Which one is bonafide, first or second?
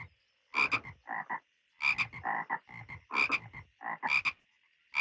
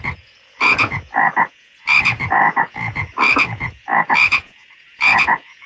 first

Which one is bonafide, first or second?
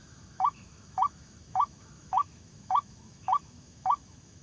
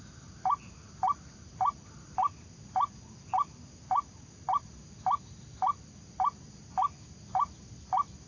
second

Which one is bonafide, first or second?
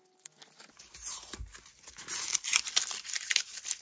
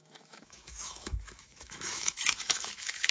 first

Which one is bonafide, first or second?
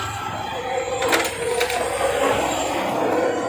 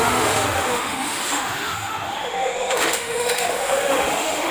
first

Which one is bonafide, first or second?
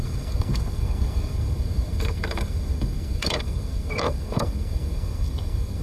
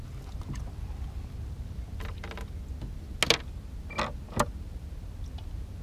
second